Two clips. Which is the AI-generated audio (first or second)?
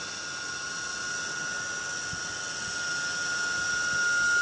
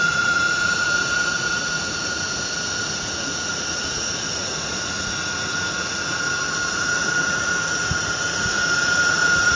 second